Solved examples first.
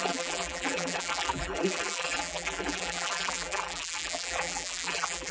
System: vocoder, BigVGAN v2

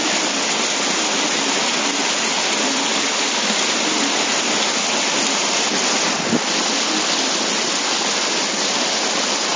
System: none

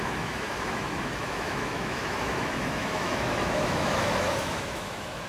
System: autoencoder, DAC-VAE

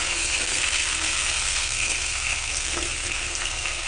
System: codec, SNAC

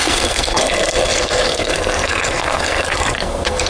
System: codec, SNAC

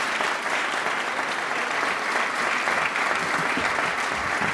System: none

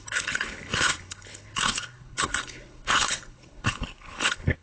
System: codec, HILCodec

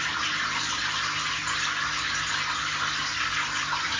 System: none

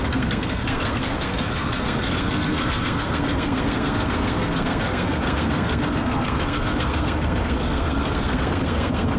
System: codec, SNAC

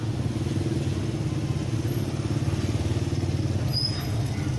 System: none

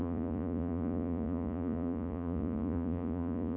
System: vocoder, Vocos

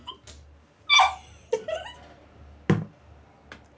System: none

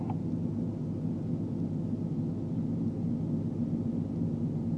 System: none